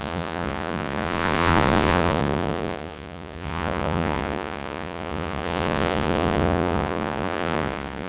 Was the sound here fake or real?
fake